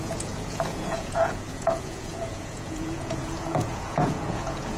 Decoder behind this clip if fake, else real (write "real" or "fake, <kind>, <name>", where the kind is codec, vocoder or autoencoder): fake, vocoder, Vocos